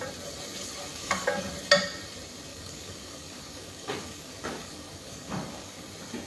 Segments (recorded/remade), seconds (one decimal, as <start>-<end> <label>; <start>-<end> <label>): 0.0-0.9 recorded; 0.9-1.5 remade; 1.5-2.5 recorded; 2.5-5.8 remade; 5.8-6.3 recorded

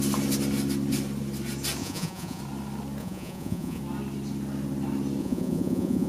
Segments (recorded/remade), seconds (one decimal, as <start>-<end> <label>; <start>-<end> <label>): 0.0-1.8 recorded; 1.8-2.4 remade; 2.4-3.0 recorded; 3.0-3.8 remade; 3.8-5.2 recorded; 5.2-6.1 remade

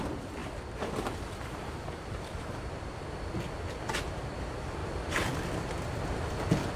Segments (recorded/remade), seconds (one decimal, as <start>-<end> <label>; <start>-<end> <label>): 0.0-0.4 recorded; 0.4-3.0 remade; 3.0-4.8 recorded; 4.8-5.4 remade; 5.4-6.8 recorded